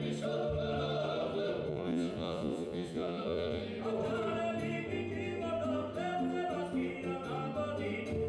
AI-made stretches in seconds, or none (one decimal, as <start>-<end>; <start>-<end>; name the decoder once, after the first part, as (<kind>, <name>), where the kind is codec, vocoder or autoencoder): 1.7-3.6 (vocoder, Vocos)